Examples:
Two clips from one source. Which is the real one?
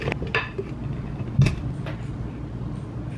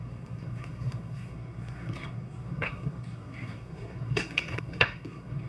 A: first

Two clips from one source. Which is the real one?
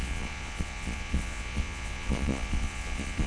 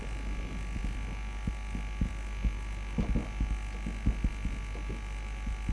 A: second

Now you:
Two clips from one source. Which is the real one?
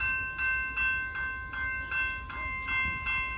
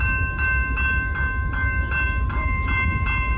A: first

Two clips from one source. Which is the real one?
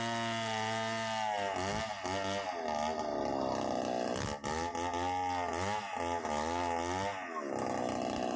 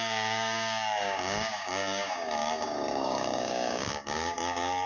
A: first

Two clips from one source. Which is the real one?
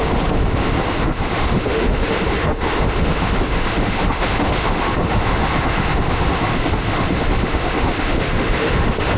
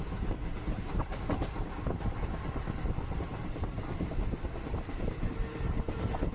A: second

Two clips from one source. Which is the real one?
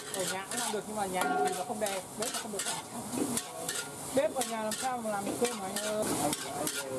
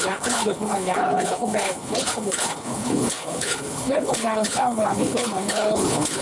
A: first